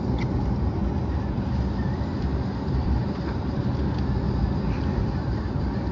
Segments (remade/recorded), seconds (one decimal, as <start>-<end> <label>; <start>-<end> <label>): 0.0-0.8 remade; 0.8-1.5 recorded; 1.5-3.6 remade; 3.6-5.0 recorded; 5.0-5.9 remade